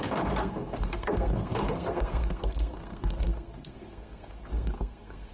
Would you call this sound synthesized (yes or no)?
yes